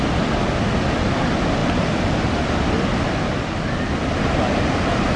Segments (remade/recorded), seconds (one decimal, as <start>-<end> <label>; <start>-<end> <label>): 0.0-5.2 recorded